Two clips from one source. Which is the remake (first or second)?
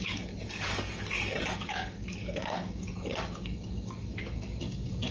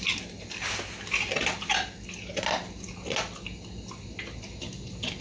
first